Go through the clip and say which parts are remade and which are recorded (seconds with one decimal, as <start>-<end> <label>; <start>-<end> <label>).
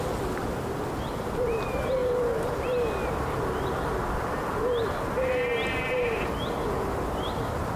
0.0-7.8 recorded